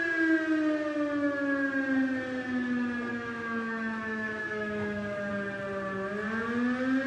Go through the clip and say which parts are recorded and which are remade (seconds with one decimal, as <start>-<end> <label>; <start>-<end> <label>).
0.0-3.1 recorded; 3.1-5.3 remade; 5.3-7.1 recorded